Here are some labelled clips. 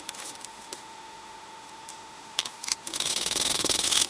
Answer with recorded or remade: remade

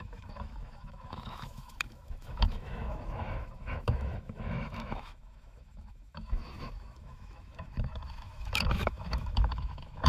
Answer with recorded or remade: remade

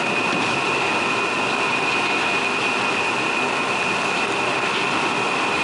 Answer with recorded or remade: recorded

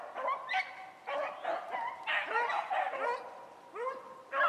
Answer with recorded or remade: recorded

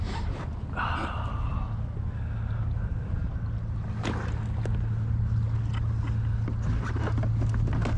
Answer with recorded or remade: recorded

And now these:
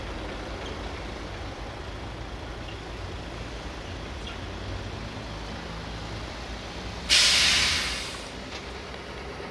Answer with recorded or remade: recorded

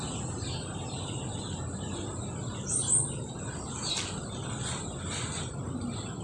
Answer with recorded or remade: recorded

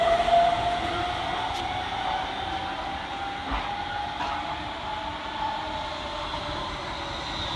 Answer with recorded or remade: recorded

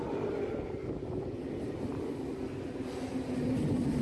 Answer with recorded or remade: recorded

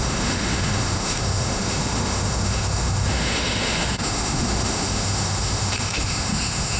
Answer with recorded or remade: remade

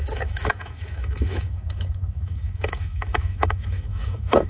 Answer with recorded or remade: remade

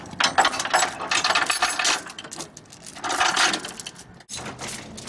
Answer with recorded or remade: recorded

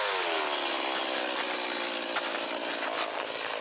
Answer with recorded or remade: recorded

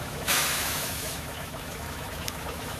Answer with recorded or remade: remade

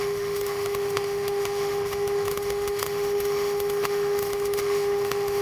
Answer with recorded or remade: remade